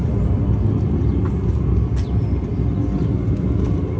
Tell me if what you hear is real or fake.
real